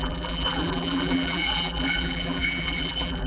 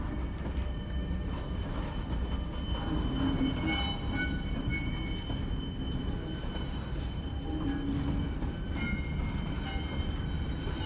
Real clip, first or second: second